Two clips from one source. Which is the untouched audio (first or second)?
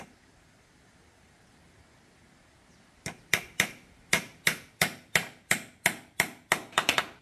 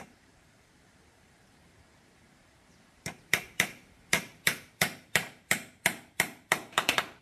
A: first